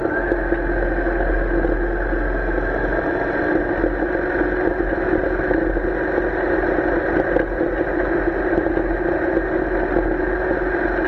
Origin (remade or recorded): recorded